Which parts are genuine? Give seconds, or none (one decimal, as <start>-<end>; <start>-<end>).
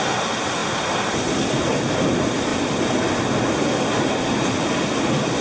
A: 0.0-0.6; 1.9-5.4